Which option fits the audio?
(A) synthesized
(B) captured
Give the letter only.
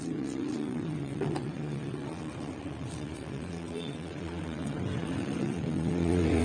A